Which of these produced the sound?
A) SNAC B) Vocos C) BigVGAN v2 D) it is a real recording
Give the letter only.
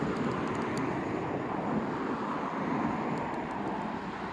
C